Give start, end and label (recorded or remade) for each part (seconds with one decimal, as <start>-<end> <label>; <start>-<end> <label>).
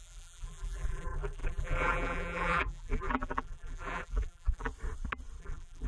0.0-4.7 remade; 4.7-5.4 recorded; 5.4-5.9 remade